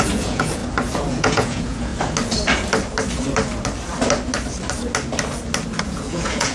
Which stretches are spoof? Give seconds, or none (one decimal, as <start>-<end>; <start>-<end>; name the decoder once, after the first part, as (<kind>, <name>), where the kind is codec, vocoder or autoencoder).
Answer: 0.0-0.6 (vocoder, Vocos); 1.1-1.9; 5.8-6.5